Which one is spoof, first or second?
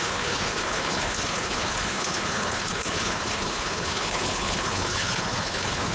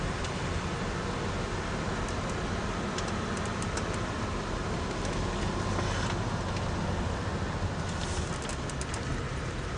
first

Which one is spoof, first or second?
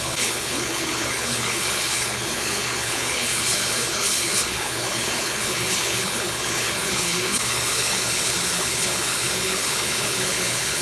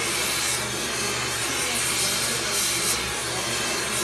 first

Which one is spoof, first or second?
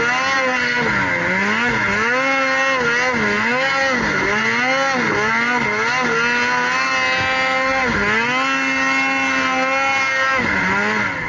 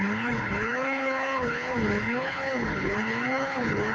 second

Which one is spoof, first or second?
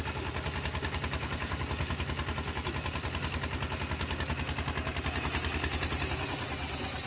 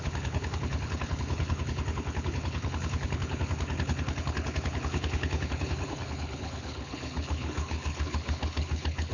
second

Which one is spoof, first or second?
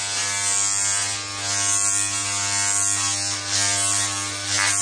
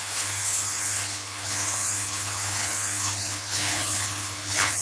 second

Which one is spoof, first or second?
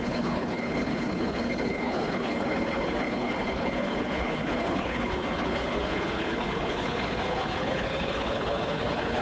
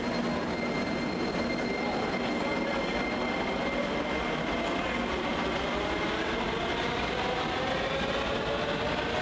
first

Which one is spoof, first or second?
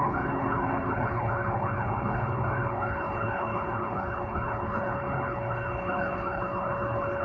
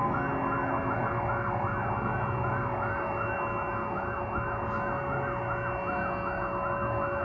first